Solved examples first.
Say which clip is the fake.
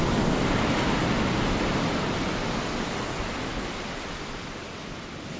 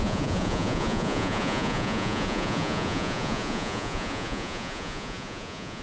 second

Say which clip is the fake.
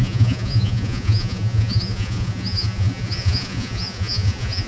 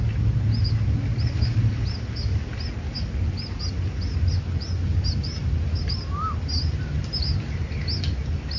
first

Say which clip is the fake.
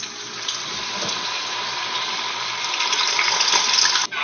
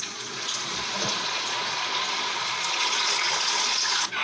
second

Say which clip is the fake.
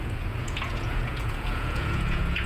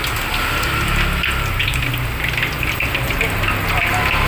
first